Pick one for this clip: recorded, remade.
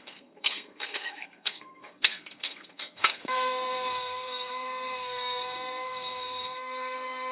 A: remade